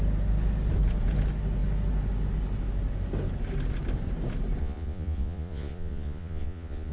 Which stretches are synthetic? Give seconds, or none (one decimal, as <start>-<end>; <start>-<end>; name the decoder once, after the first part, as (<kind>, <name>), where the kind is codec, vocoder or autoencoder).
4.6-6.9 (vocoder, Vocos)

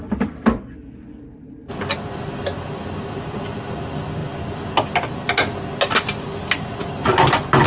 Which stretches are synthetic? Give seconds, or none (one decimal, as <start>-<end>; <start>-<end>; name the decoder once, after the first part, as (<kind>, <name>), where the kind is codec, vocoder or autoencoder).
none

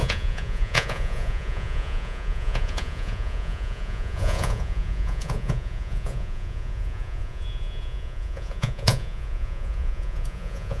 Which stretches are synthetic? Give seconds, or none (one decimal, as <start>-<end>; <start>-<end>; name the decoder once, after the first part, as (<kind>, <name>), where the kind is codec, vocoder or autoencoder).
0.0-10.8 (vocoder, Vocos)

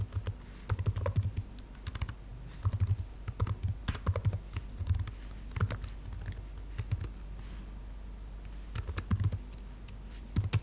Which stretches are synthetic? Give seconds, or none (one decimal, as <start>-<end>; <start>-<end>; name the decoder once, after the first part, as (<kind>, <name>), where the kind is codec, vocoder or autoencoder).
none

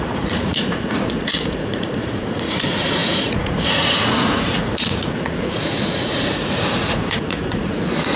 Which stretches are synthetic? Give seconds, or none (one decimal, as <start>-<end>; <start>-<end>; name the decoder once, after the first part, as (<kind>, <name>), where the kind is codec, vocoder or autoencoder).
0.0-8.2 (vocoder, Vocos)

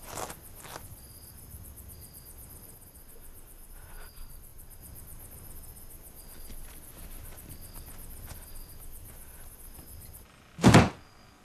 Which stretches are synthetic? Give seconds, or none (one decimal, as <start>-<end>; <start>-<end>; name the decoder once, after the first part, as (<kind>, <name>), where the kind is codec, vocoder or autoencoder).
none

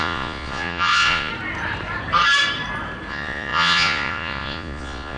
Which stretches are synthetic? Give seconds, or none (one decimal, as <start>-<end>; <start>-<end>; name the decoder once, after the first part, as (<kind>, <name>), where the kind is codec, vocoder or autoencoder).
0.0-1.3 (vocoder, Vocos); 3.1-5.2

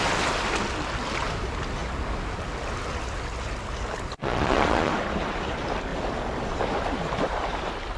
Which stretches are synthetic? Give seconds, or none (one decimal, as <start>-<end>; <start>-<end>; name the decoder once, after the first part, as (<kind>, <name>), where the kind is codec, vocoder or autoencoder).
4.2-4.9 (vocoder, Vocos)